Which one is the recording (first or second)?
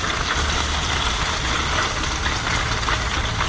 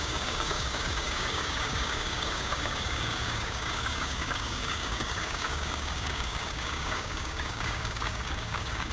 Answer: first